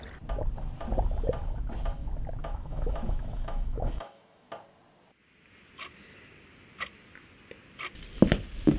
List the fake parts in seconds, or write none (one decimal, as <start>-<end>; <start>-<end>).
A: 2.4-4.5